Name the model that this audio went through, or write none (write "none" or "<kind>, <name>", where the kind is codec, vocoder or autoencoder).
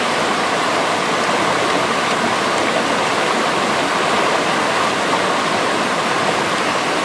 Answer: none